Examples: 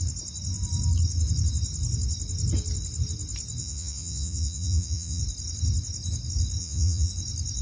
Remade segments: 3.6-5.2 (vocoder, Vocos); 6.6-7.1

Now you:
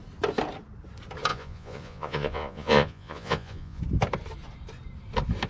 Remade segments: 1.3-3.8 (vocoder, Vocos)

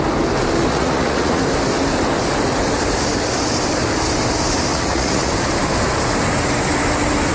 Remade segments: 0.7-1.4 (vocoder, Vocos); 4.7-5.3

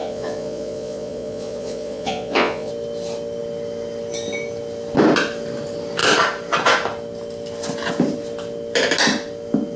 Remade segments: 0.0-2.7 (vocoder, Vocos)